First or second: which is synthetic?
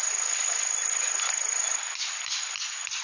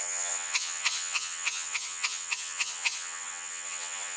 second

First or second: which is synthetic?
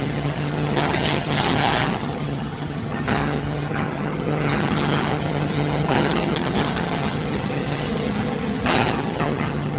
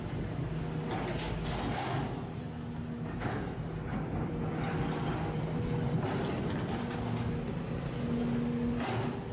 first